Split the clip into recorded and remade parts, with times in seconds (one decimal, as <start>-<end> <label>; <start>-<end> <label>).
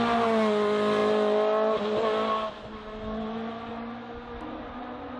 0.0-5.2 recorded